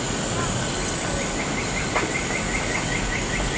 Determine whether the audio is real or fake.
real